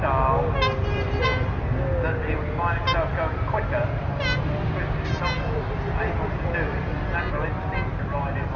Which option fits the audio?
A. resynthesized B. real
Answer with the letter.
B